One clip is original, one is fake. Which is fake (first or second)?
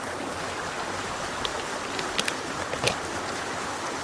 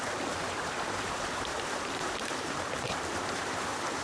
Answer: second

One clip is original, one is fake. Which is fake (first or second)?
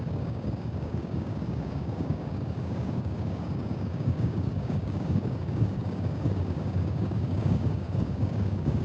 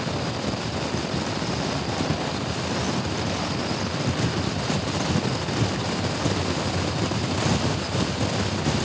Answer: first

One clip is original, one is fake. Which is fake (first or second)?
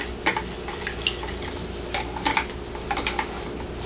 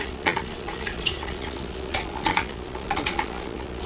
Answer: second